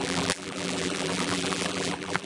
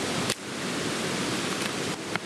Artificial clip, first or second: first